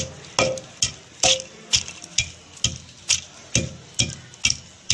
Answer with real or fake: real